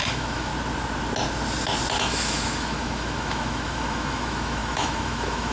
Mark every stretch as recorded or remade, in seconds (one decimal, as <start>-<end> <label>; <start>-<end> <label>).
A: 0.0-0.5 remade; 0.5-2.0 recorded; 2.0-5.5 remade